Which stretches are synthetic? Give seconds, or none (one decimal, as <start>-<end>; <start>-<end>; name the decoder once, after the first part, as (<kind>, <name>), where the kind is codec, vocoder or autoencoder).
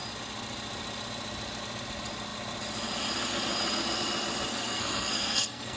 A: 4.5-5.8 (codec, SNAC)